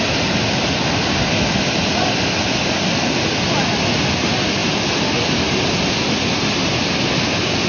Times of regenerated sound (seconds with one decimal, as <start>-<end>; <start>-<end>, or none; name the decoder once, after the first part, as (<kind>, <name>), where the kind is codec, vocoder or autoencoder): none